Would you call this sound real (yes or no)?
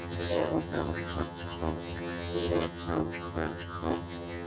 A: no